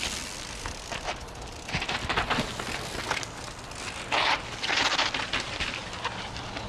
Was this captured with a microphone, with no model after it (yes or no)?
yes